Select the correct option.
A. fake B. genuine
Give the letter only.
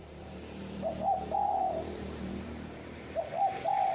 A